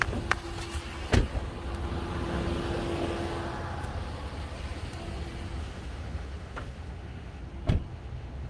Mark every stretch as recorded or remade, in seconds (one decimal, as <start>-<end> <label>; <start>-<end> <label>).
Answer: 0.0-5.6 recorded; 5.6-7.4 remade; 7.4-7.9 recorded; 7.9-8.5 remade